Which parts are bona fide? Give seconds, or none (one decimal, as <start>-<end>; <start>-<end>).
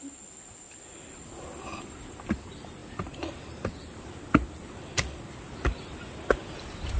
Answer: 0.0-7.0